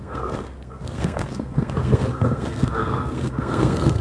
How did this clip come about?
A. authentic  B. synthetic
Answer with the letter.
B